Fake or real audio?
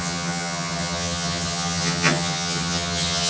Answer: fake